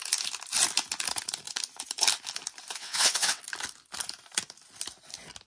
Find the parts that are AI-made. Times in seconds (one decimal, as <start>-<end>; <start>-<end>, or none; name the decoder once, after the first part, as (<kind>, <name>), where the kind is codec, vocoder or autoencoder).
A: 2.7-3.4 (vocoder, WaveNeXt)